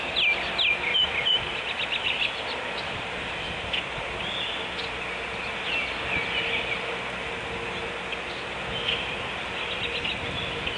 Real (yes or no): yes